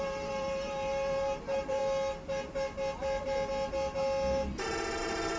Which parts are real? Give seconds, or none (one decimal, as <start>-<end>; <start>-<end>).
1.8-5.0